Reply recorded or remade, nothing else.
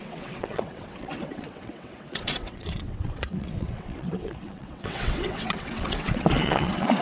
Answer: remade